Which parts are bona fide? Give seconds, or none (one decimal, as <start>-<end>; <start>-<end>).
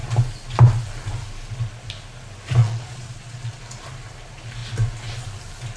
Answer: 0.0-2.6; 3.6-5.8